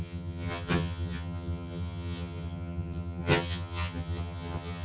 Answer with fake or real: fake